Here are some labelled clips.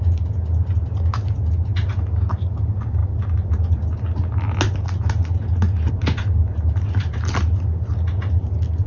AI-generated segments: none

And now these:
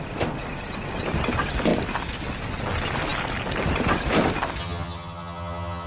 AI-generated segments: 4.6-5.9 (vocoder, HiFi-GAN)

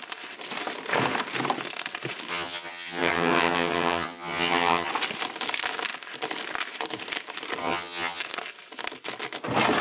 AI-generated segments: 2.3-4.9 (vocoder, HiFi-GAN); 7.6-8.2

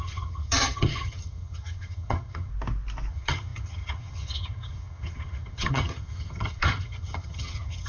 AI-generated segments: 0.0-2.5 (vocoder, HiFi-GAN); 3.1-7.9

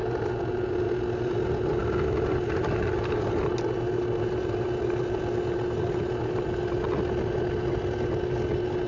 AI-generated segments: none